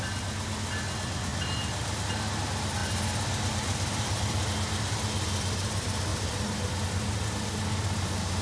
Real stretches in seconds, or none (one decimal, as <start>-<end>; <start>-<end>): 0.0-1.3; 2.1-2.8; 4.5-6.1; 7.5-8.4